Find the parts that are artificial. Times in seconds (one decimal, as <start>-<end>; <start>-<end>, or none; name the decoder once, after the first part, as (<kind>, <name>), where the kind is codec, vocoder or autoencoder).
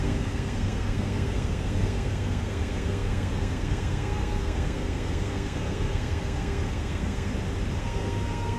0.0-7.3 (codec, SNAC); 7.8-8.6